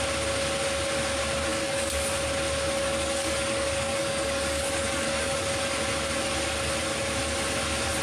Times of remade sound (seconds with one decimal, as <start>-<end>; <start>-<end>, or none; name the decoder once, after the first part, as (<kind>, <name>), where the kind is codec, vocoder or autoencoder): 1.5-2.0 (codec, DAC); 2.8-5.5